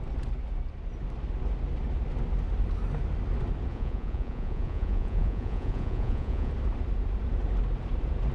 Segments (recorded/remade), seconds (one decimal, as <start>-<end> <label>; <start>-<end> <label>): 0.0-3.7 recorded; 3.7-6.5 remade; 6.5-8.3 recorded